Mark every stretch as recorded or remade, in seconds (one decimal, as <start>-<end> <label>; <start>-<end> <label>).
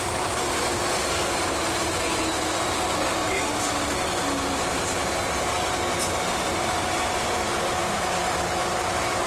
0.0-9.3 recorded